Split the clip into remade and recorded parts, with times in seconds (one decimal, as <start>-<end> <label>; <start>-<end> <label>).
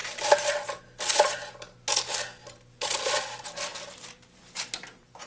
0.0-0.8 remade; 0.8-3.7 recorded; 3.7-4.7 remade; 4.7-5.3 recorded